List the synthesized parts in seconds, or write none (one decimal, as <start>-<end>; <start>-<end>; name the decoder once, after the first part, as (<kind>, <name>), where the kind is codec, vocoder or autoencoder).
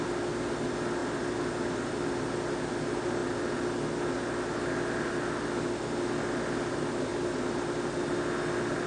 none